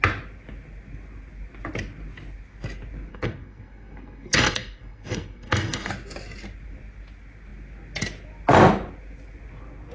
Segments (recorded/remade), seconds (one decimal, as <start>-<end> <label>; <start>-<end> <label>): 0.0-3.1 recorded; 3.1-5.9 remade; 5.9-9.9 recorded